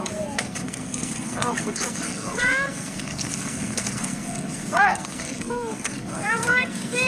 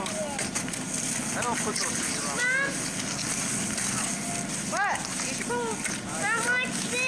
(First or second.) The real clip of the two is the second